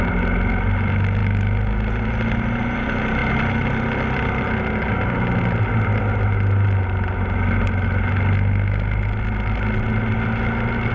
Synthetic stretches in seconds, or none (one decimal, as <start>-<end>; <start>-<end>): none